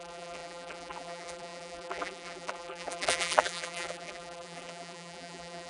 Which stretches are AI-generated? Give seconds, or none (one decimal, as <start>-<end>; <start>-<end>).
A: 0.0-5.7